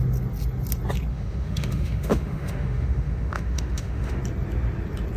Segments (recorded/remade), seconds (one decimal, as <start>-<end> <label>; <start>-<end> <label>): 0.0-1.1 recorded; 1.1-4.2 remade; 4.2-5.2 recorded